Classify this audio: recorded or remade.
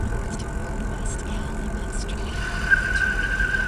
recorded